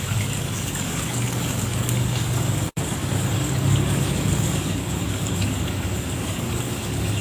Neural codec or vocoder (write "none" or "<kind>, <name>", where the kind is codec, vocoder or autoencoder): codec, DAC